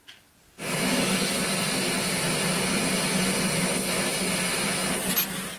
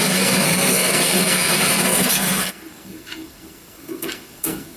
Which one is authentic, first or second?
first